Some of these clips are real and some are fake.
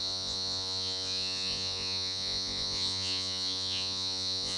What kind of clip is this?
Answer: fake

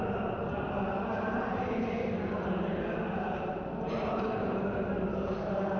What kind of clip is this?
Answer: fake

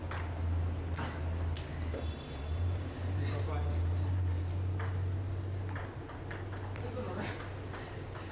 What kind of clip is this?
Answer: real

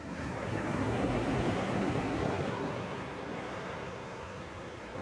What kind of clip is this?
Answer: fake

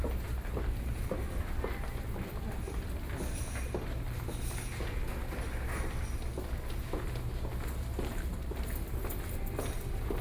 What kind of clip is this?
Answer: real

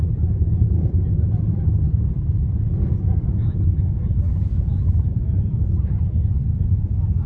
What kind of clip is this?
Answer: fake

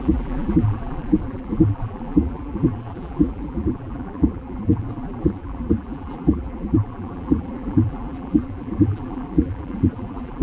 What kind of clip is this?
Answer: fake